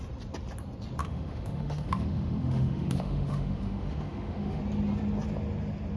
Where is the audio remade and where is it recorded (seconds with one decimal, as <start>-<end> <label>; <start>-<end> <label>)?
0.0-1.0 recorded; 1.0-4.6 remade; 4.6-6.0 recorded